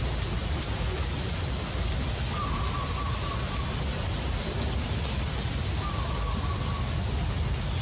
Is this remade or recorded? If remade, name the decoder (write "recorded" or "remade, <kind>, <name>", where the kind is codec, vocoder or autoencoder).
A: recorded